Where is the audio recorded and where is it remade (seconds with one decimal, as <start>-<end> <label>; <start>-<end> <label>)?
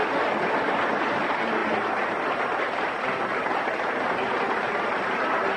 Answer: 0.0-5.6 recorded